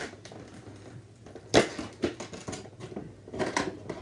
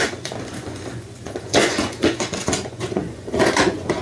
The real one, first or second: first